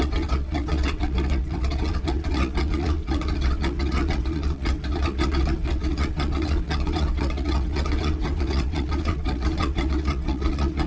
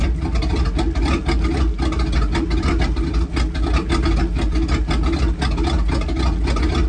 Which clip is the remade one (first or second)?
first